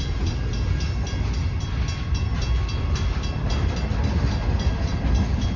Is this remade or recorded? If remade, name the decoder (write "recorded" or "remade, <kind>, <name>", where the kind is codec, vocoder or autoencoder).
recorded